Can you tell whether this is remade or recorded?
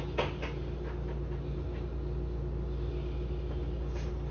recorded